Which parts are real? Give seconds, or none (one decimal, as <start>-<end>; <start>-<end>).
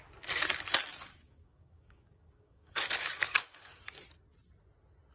0.0-0.9; 4.0-5.1